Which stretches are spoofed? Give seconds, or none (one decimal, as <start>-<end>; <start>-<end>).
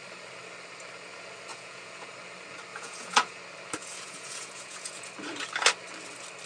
1.5-2.1; 2.7-3.4; 3.8-5.1